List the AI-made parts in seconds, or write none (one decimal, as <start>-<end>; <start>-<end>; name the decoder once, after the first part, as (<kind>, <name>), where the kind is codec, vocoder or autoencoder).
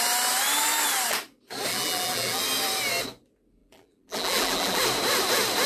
1.7-2.4 (vocoder, BigVGAN v2); 3.6-4.8